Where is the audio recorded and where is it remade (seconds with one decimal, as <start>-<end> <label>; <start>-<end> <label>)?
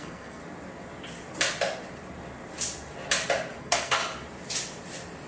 0.0-0.4 remade; 0.4-3.6 recorded; 3.6-4.0 remade; 4.0-5.3 recorded